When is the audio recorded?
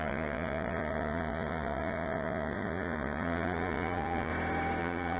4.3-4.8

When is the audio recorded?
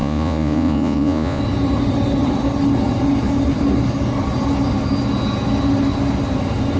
1.4-6.8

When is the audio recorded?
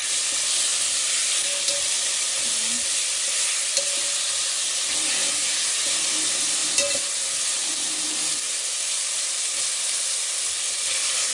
0.0-11.3